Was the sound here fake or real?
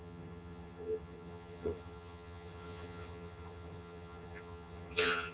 fake